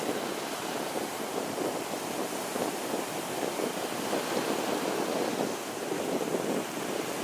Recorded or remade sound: recorded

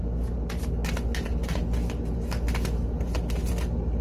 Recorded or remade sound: recorded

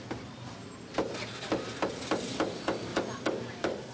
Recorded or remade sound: recorded